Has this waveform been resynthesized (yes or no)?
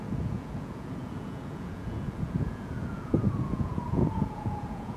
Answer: yes